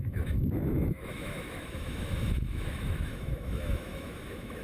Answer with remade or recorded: remade